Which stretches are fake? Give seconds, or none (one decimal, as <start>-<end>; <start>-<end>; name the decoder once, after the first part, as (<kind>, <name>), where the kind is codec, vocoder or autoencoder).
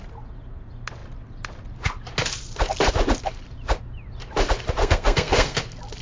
4.8-5.6 (codec, SNAC)